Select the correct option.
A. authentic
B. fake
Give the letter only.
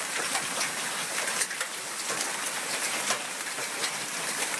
B